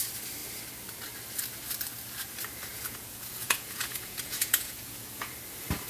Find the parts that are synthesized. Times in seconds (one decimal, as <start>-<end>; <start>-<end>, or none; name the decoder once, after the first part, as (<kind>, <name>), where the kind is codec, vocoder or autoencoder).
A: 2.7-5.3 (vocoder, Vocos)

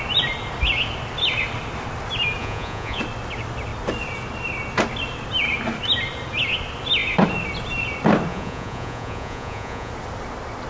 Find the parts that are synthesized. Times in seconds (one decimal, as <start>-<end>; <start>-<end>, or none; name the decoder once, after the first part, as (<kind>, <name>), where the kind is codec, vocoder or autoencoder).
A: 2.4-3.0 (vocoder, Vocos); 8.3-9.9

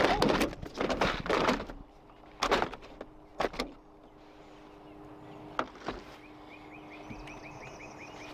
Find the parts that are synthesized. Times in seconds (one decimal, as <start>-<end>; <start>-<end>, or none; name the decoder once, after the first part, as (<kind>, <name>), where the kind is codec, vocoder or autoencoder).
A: none

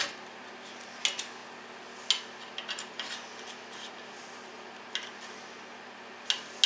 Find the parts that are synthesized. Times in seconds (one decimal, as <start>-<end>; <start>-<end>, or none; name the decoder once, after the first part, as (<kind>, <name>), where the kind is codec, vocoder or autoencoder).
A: none

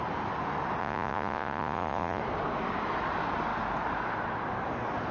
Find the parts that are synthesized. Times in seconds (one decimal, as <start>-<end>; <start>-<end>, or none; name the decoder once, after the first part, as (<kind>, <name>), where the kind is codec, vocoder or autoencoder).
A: 0.8-2.2 (vocoder, Vocos)

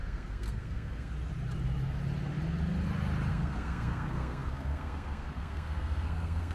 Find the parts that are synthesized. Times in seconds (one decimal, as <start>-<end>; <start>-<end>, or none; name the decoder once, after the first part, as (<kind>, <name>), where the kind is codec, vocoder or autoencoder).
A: 0.0-1.1 (codec, SNAC); 3.3-6.5

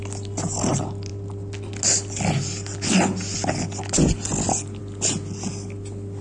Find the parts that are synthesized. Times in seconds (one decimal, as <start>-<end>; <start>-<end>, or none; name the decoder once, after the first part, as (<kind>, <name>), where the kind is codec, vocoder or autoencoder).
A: none